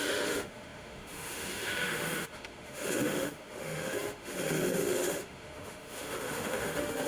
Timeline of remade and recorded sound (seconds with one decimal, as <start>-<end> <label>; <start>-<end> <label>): 0.0-7.1 remade